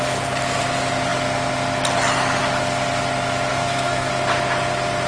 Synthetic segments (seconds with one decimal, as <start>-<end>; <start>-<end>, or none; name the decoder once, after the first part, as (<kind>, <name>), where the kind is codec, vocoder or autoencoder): 3.5-4.1 (codec, SNAC)